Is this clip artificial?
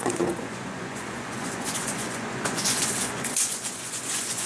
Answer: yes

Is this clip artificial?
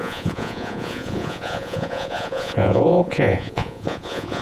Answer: yes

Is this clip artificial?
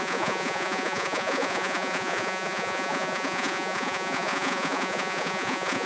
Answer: yes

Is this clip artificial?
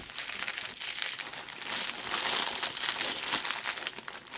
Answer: no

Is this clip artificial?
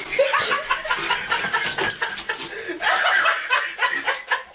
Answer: no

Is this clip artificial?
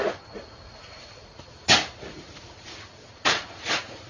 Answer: yes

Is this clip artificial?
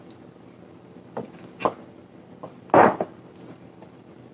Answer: no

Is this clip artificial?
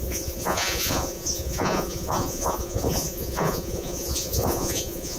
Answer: yes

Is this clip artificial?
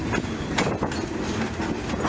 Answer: no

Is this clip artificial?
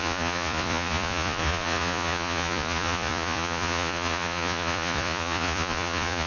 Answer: yes